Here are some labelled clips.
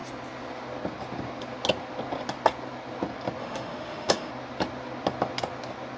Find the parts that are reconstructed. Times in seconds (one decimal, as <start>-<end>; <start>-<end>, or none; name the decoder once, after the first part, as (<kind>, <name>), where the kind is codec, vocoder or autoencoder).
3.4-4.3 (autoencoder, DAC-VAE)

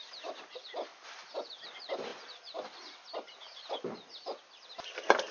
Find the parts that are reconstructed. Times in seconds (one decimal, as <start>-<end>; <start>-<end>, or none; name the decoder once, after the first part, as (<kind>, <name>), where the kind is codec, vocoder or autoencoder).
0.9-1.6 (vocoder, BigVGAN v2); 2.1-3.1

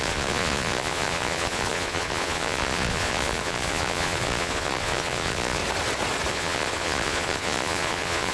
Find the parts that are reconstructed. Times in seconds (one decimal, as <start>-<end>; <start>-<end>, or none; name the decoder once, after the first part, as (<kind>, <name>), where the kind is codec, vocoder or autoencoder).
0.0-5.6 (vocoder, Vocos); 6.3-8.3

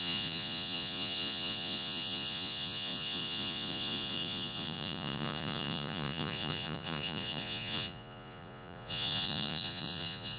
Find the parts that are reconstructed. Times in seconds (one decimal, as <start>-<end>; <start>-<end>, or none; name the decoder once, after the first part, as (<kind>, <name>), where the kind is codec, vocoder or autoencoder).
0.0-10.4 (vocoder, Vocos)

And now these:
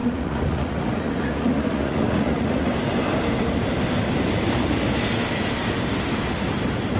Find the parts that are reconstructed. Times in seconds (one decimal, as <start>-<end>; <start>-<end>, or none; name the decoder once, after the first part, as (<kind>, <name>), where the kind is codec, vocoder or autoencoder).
0.0-2.7 (vocoder, Vocos)

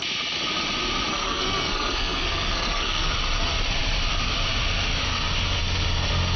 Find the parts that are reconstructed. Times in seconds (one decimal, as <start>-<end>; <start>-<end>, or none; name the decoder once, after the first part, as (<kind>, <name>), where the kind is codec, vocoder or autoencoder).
1.1-3.1 (codec, SNAC)

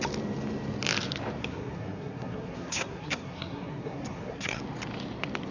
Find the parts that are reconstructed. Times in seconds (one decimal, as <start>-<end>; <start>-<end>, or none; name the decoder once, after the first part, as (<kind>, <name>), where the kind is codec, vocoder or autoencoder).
1.4-4.6 (codec, SNAC)

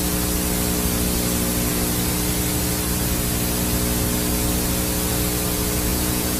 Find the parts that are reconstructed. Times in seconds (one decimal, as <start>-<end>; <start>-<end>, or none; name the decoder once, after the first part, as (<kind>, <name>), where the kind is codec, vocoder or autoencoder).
5.9-6.4 (vocoder, Vocos)